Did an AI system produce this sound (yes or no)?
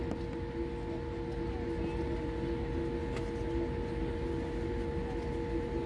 no